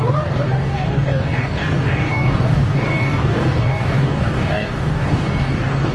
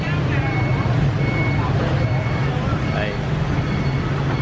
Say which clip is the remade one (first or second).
first